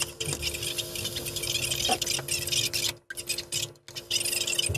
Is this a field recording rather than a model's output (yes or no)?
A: yes